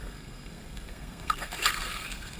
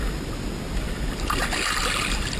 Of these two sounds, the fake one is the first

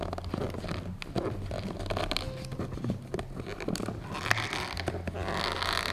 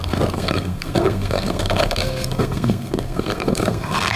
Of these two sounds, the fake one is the second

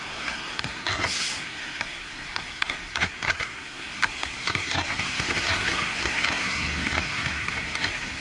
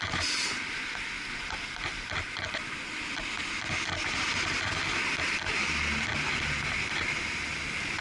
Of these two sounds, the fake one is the first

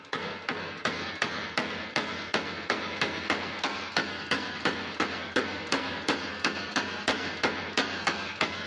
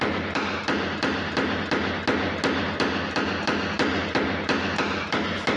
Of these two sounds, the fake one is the first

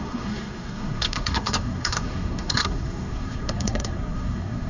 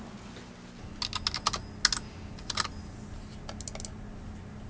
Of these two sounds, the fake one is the first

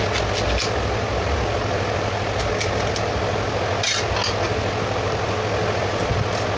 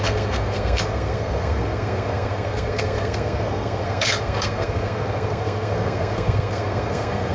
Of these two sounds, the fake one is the second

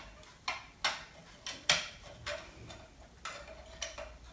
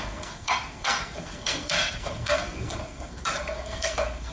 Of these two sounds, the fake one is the second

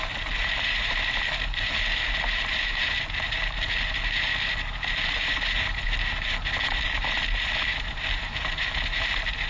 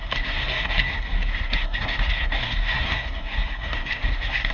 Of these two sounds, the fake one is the second